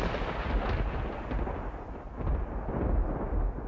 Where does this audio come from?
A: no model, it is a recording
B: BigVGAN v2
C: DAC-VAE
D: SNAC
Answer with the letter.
A